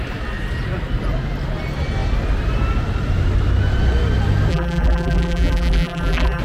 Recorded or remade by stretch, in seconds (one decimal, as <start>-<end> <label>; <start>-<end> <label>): 0.0-4.5 recorded; 4.5-6.4 remade

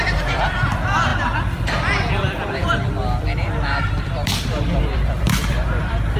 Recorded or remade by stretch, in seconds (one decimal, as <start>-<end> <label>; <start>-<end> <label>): 0.0-6.2 remade

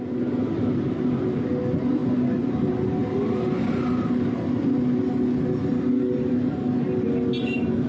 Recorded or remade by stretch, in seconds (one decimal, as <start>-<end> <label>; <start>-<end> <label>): 0.0-7.9 recorded

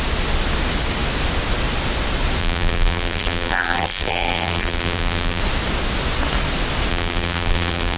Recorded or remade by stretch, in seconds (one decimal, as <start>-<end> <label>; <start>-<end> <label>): 0.0-2.4 recorded; 2.4-5.4 remade; 5.4-6.9 recorded; 6.9-8.0 remade

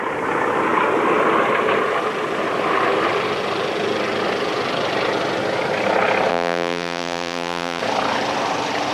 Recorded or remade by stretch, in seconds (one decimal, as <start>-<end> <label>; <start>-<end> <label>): 0.0-6.3 recorded; 6.3-7.8 remade; 7.8-8.9 recorded

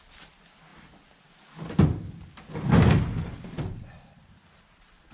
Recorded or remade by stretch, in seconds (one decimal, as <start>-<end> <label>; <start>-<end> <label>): 0.0-5.1 recorded